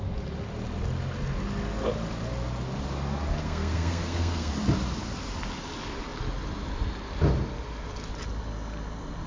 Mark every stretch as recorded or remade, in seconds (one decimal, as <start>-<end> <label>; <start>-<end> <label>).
0.0-3.4 recorded; 3.4-4.5 remade; 4.5-9.3 recorded